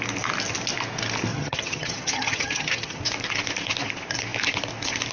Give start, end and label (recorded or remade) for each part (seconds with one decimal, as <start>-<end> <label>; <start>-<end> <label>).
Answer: 0.0-1.3 recorded; 1.3-3.0 remade; 3.0-5.1 recorded

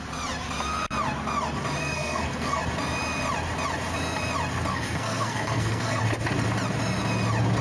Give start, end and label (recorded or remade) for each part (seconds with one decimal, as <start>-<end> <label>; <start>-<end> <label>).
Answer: 0.0-1.8 recorded; 1.8-2.6 remade; 2.6-4.7 recorded; 4.7-6.0 remade; 6.0-7.6 recorded

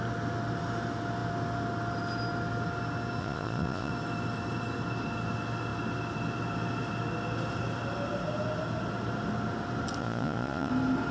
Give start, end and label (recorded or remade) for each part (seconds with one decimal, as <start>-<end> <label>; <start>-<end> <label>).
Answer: 0.0-3.2 recorded; 3.2-3.9 remade; 3.9-10.0 recorded; 10.0-10.7 remade; 10.7-11.1 recorded